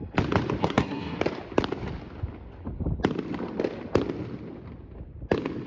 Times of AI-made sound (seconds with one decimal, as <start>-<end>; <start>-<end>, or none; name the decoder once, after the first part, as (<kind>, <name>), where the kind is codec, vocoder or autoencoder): 0.6-1.2 (codec, SNAC)